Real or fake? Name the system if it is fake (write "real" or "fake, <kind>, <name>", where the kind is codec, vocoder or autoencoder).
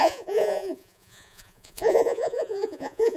fake, vocoder, Vocos